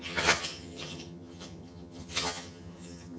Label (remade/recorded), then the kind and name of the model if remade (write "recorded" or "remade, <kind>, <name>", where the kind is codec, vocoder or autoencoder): remade, vocoder, HiFi-GAN